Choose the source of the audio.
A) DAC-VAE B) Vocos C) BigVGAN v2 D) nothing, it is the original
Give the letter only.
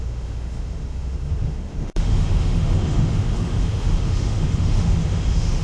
A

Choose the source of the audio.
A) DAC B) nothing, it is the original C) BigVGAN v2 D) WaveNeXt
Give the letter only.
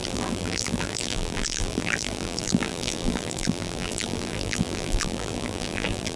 C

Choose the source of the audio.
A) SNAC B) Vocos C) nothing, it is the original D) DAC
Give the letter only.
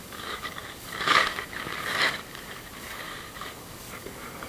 D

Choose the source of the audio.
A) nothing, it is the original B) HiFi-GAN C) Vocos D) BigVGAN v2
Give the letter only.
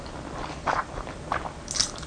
A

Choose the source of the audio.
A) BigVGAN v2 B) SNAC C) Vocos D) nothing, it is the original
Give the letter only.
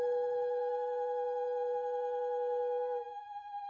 D